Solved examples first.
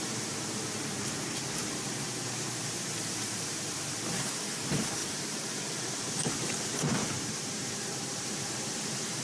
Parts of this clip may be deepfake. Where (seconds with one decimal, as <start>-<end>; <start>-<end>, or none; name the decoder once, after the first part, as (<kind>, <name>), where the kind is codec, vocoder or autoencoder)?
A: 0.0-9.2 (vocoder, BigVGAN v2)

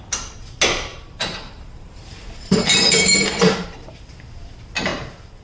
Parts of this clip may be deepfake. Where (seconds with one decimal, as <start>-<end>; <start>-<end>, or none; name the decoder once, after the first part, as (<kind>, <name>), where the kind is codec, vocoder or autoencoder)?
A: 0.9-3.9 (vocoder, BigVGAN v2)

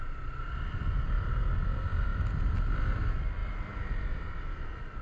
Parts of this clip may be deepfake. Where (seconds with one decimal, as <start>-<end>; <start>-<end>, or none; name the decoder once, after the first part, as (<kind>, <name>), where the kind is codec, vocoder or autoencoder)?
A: 0.8-1.4 (vocoder, BigVGAN v2); 3.4-3.9